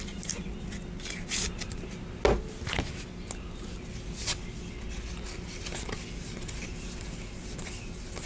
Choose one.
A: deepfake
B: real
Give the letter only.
B